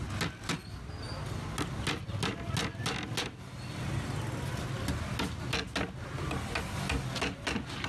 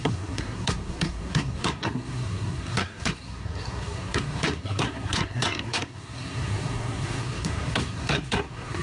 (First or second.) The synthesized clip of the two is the second